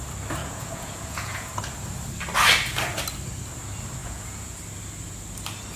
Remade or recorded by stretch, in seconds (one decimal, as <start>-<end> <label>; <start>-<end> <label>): 0.0-0.4 recorded; 0.4-1.6 remade; 1.6-4.0 recorded; 4.0-4.6 remade; 4.6-5.8 recorded